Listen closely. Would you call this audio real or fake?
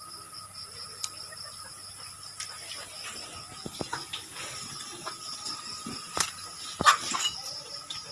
real